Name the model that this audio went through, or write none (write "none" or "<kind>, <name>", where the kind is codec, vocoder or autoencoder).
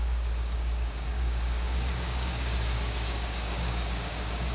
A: codec, DAC